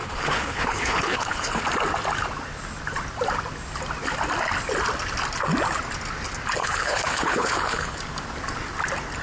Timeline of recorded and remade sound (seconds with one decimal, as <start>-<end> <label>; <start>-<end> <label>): 0.0-1.6 remade; 1.6-6.6 recorded; 6.6-8.0 remade; 8.0-9.2 recorded